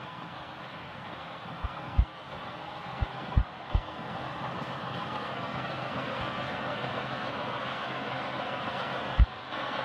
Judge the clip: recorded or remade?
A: remade